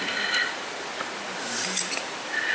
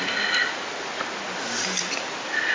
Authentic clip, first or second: second